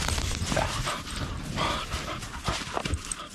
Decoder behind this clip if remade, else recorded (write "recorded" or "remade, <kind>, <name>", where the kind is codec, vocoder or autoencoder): remade, vocoder, BigVGAN v2